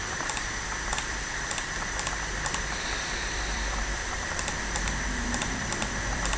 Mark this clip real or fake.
fake